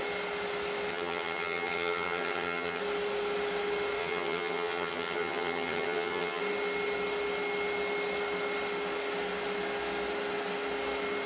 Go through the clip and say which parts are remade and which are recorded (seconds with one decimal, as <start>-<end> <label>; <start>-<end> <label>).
0.0-0.9 recorded; 0.9-2.8 remade; 2.8-4.0 recorded; 4.0-6.4 remade; 6.4-11.3 recorded